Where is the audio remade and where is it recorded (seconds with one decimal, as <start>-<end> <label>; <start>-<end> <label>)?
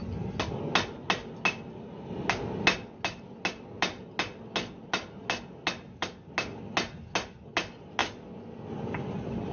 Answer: 0.0-9.5 recorded